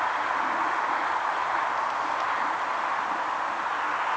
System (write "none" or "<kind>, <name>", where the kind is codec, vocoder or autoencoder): none